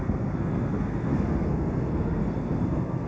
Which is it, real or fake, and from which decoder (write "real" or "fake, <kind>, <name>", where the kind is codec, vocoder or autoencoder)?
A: fake, codec, SNAC